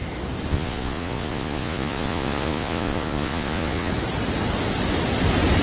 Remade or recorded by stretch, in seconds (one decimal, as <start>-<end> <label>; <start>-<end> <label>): 0.0-0.5 recorded; 0.5-3.9 remade; 3.9-5.6 recorded